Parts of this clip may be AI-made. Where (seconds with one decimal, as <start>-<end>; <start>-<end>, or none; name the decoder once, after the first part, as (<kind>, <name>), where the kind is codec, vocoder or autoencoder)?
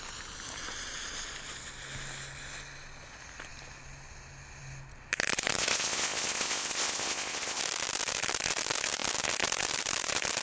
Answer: 5.6-7.6 (codec, ZipCodec)